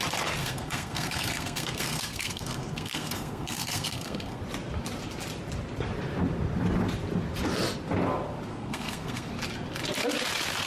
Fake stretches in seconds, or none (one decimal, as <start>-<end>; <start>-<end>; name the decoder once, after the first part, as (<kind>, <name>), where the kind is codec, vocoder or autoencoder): 0.4-4.4 (codec, SNAC); 8.5-9.3